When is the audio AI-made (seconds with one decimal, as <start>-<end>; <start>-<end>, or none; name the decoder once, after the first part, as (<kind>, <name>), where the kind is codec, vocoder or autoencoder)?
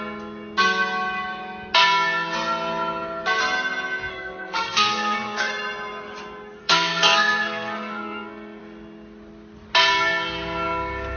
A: 4.1-5.5 (codec, SNAC); 6.6-8.6